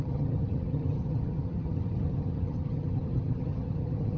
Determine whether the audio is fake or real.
fake